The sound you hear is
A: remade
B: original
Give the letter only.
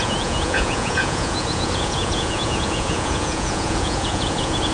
A